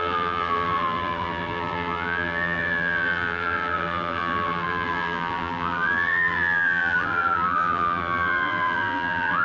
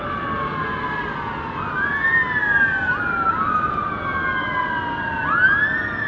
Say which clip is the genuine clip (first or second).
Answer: second